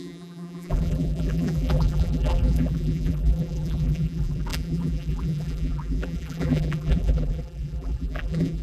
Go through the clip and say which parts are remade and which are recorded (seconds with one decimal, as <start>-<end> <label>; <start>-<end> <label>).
0.0-8.6 remade